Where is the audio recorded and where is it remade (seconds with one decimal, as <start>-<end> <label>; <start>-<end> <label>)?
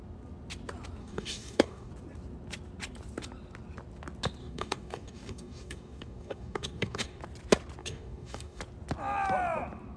0.0-1.0 recorded; 1.0-1.9 remade; 1.9-4.4 recorded; 4.4-7.2 remade; 7.2-7.8 recorded; 7.8-8.6 remade; 8.6-10.0 recorded